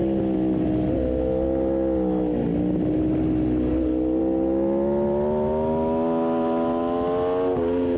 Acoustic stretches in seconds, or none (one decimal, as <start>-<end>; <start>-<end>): 0.0-8.0